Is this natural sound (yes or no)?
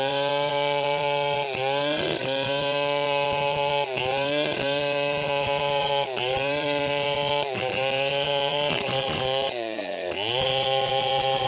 no